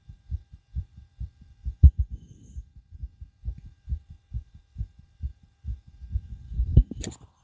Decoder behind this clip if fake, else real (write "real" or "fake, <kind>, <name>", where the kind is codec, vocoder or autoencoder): real